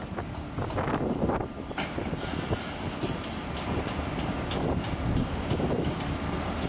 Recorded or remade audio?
recorded